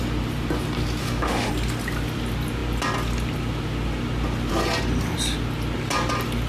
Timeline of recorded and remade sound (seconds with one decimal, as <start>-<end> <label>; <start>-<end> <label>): 0.0-1.0 recorded; 1.0-1.5 remade; 1.5-6.5 recorded